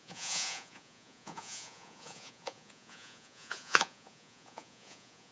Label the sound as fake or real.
fake